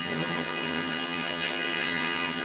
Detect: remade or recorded remade